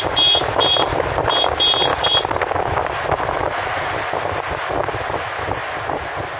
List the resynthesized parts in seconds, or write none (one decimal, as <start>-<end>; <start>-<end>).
none